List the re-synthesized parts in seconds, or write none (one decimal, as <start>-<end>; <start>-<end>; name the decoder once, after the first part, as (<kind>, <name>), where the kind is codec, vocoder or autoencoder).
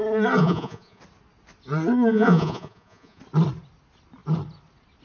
0.4-1.0 (vocoder, Vocos); 2.1-3.2